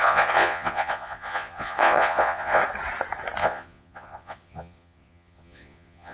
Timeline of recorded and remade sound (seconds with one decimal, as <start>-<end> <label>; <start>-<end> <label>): 0.0-2.6 remade; 2.6-3.4 recorded; 3.4-6.1 remade